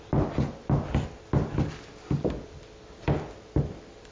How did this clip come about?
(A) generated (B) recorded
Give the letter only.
B